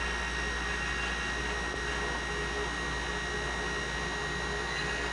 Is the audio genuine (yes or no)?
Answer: yes